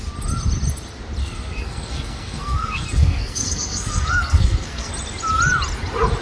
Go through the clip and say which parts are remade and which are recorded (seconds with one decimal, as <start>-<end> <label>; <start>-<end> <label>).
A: 0.0-1.2 recorded; 1.2-4.9 remade; 4.9-6.2 recorded